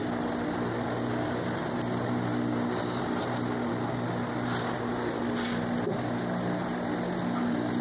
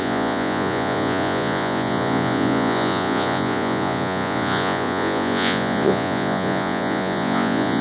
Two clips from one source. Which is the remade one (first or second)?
second